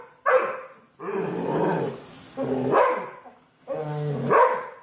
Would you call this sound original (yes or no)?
yes